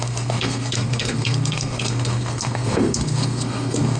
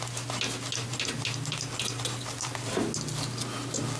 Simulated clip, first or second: first